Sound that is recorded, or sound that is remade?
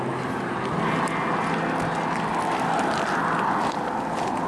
recorded